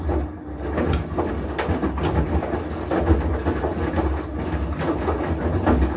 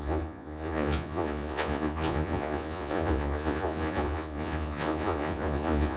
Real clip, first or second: first